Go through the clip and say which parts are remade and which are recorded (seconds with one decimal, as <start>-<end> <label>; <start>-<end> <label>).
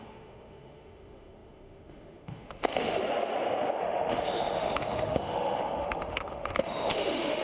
0.0-3.0 remade; 3.0-3.8 recorded; 3.8-7.4 remade